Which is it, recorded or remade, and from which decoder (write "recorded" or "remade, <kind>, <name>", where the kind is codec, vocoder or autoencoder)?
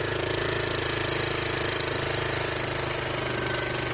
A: recorded